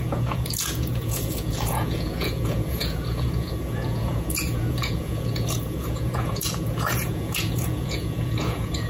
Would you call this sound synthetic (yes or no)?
yes